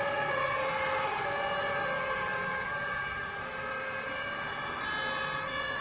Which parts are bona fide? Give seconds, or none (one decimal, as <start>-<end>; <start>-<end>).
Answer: 0.0-5.8